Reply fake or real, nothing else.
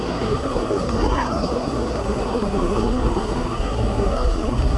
fake